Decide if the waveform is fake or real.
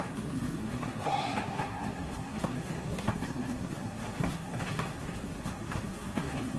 fake